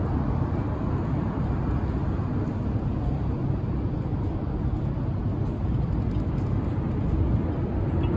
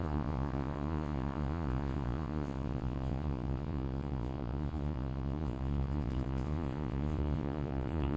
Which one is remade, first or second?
second